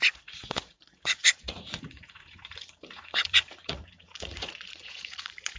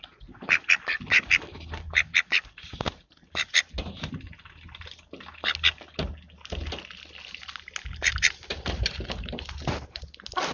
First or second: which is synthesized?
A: first